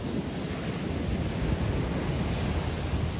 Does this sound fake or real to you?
real